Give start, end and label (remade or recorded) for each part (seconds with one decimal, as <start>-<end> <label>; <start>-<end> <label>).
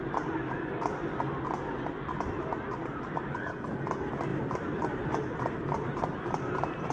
0.0-4.3 recorded; 4.3-6.9 remade